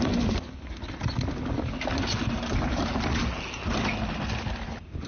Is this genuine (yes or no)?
yes